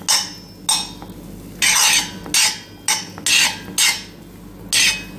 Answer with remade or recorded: recorded